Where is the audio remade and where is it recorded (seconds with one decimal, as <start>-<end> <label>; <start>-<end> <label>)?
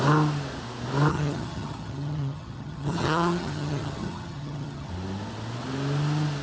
0.0-1.1 recorded; 1.1-4.9 remade; 4.9-6.4 recorded